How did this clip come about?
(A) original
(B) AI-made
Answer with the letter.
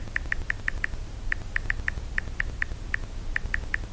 A